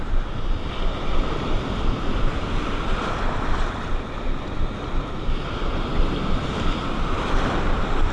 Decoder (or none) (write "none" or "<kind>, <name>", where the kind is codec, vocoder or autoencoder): none